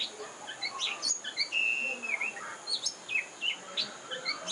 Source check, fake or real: real